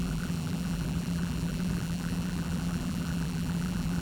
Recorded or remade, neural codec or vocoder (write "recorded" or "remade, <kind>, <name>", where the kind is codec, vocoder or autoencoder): remade, vocoder, BigVGAN v2